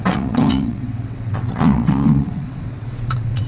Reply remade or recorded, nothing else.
remade